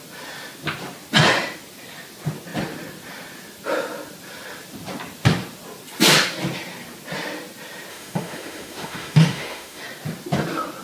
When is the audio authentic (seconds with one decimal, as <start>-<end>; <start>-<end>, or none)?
0.0-7.9; 9.8-10.8